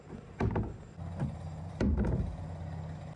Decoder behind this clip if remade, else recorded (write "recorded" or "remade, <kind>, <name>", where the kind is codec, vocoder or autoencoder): recorded